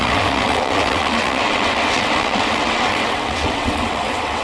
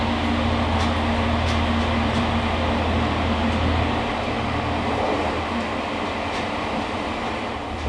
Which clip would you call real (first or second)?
second